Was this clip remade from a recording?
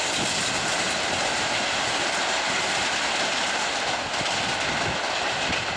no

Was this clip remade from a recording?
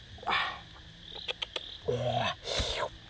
no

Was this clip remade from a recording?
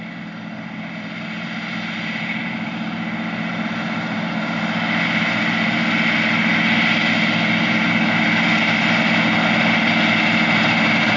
no